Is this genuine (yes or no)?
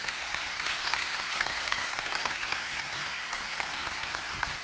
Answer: no